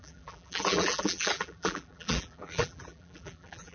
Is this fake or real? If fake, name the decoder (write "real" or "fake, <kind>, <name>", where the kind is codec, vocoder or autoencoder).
fake, vocoder, BigVGAN v2